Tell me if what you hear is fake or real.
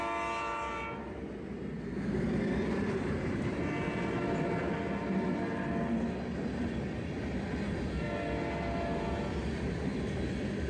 real